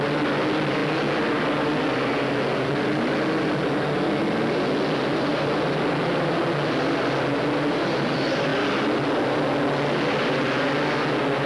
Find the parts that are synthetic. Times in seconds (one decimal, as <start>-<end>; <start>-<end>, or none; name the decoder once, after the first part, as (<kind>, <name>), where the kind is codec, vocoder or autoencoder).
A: none